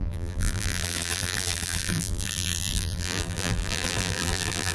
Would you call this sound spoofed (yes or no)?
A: yes